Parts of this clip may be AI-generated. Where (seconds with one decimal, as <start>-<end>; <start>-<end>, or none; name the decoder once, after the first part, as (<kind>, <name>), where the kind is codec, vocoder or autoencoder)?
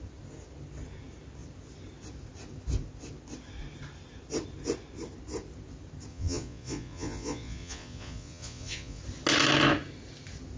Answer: 6.1-9.0 (vocoder, Vocos)